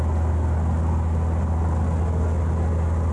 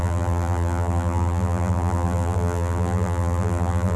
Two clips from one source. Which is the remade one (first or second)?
second